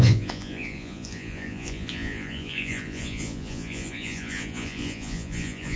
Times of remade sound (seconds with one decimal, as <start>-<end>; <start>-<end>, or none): 0.0-5.8